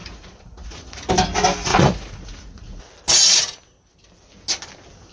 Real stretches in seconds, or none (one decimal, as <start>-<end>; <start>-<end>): 1.1-1.7; 2.8-5.1

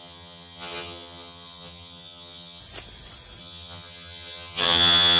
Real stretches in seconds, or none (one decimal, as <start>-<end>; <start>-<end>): 2.6-3.4